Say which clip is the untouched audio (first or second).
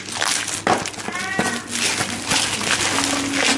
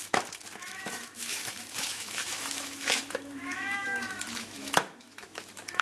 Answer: first